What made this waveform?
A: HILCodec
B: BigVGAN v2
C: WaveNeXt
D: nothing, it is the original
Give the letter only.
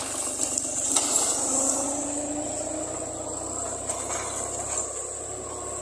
D